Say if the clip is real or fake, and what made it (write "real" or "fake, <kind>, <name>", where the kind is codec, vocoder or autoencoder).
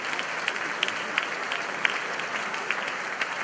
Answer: real